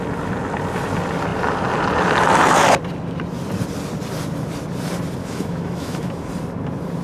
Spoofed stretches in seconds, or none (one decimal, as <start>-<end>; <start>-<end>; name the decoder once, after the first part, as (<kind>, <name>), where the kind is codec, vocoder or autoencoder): 5.2-6.3 (autoencoder, DAC-VAE)